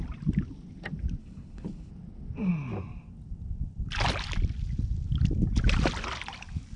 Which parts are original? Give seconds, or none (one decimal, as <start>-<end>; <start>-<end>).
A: 0.0-1.2; 1.9-6.8